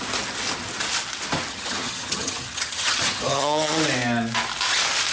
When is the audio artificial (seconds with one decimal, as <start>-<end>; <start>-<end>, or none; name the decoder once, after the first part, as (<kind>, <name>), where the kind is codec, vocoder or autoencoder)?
1.5-3.8 (vocoder, HiFi-GAN)